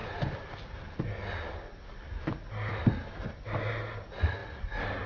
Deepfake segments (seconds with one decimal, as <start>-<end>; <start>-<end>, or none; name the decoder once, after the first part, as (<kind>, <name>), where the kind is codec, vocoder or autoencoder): 4.4-5.1 (vocoder, BigVGAN v2)